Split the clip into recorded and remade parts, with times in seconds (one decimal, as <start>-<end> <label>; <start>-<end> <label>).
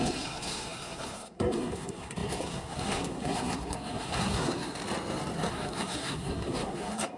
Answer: 0.0-4.8 remade; 4.8-5.5 recorded; 5.5-7.2 remade